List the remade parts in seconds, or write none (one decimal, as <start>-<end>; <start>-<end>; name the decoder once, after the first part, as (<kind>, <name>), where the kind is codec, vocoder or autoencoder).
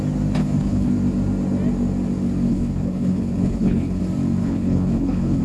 0.4-0.9 (codec, HILCodec); 2.5-4.0; 4.4-5.4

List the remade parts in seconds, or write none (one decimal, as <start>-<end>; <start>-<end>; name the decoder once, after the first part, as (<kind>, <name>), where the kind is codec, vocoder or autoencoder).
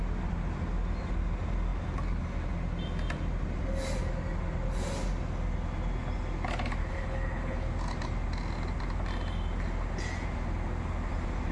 6.8-7.7 (codec, HILCodec)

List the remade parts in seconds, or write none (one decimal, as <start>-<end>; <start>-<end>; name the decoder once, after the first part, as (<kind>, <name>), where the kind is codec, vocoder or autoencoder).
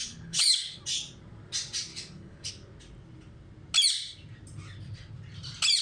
0.0-0.8 (codec, HILCodec); 1.9-2.5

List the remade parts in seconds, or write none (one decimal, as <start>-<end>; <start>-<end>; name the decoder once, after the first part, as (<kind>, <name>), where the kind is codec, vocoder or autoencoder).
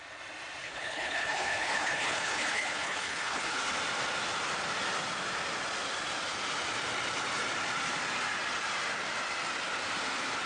0.6-3.6 (codec, HILCodec)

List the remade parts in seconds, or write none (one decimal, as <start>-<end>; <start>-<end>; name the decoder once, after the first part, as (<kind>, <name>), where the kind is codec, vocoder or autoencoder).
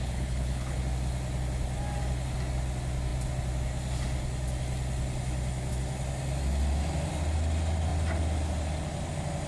0.0-0.8 (codec, HILCodec)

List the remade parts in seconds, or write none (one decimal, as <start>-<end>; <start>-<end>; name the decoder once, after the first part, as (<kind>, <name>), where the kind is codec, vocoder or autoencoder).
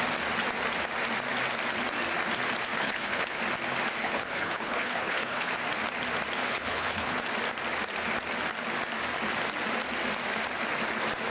2.7-3.4 (codec, HILCodec); 4.0-5.5; 6.4-7.2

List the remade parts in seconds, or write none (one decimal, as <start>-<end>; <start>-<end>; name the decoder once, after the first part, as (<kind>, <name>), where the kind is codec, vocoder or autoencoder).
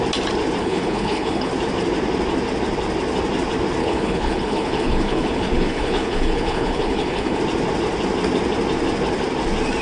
0.6-1.5 (codec, HILCodec); 3.8-7.4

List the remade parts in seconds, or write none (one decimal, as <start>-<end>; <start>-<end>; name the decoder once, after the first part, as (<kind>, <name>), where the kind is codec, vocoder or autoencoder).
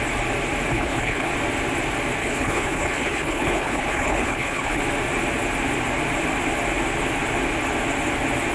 0.7-1.3 (codec, HILCodec); 2.2-4.8